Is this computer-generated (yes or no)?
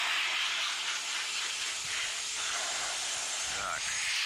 no